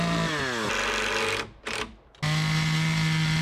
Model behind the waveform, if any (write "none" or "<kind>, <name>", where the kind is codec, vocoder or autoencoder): none